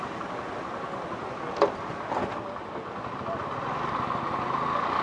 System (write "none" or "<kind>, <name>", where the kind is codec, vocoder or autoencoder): none